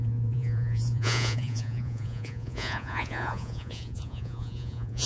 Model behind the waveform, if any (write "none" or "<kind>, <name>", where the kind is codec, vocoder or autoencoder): vocoder, Vocos